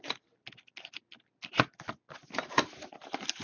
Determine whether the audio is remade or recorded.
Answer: recorded